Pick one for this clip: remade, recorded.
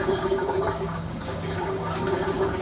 remade